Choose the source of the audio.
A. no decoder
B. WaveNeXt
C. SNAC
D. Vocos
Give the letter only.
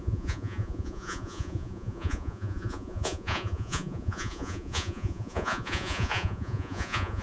D